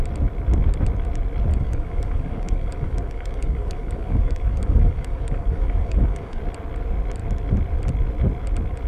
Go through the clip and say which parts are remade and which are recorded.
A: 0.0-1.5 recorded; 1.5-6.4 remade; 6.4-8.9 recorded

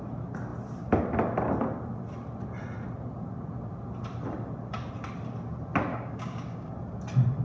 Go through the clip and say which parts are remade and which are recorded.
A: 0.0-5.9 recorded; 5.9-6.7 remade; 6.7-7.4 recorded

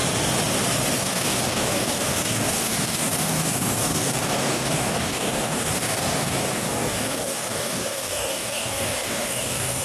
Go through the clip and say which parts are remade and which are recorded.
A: 0.0-1.0 recorded; 1.0-9.8 remade